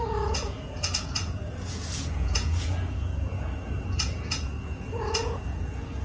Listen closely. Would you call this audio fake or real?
fake